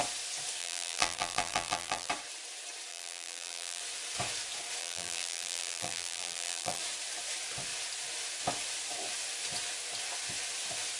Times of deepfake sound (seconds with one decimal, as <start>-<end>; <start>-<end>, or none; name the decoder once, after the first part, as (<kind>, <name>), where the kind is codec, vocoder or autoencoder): 0.6-2.1 (vocoder, BigVGAN v2); 2.9-3.8; 4.8-6.8